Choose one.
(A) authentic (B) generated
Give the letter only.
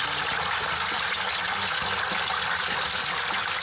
A